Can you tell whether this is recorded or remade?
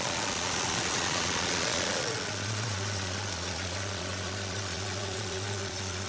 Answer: remade